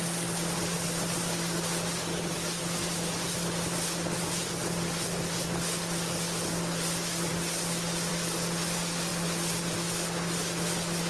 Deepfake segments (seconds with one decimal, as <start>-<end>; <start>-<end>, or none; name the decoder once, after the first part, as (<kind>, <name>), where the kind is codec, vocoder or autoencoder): none